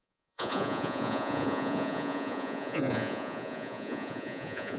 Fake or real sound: fake